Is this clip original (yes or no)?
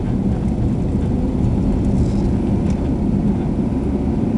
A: yes